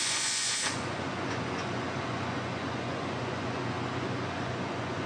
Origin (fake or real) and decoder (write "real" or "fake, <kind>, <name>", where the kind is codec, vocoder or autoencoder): fake, vocoder, Vocos